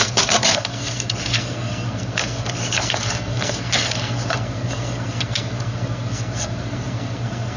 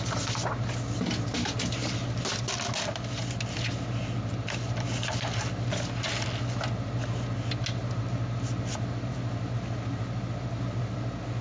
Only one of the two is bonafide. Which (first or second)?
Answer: second